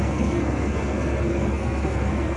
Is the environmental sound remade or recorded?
remade